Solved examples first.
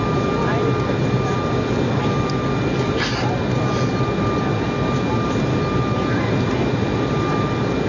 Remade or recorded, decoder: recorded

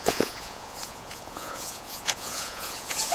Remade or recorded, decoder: remade, vocoder, Vocos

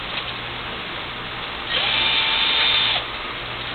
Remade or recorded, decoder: recorded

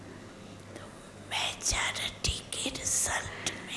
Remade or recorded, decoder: recorded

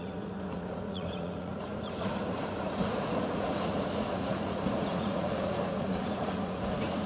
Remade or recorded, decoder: remade, vocoder, Vocos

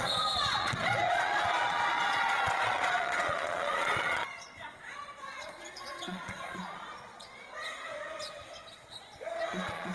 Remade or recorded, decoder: remade, vocoder, Vocos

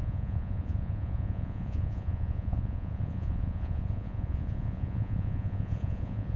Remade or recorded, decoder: remade, vocoder, Vocos